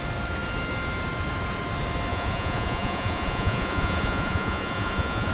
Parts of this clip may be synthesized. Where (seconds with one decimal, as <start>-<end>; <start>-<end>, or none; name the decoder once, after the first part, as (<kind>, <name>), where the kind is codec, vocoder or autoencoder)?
2.1-5.3 (vocoder, Vocos)